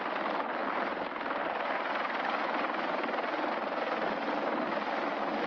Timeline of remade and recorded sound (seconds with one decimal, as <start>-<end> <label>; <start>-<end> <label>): 0.0-0.6 recorded; 0.6-3.5 remade; 3.5-5.5 recorded